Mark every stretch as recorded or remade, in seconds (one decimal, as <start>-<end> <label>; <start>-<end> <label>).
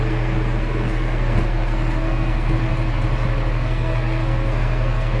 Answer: 0.0-2.7 remade; 2.7-3.5 recorded; 3.5-5.2 remade